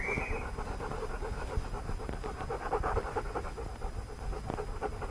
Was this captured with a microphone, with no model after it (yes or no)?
yes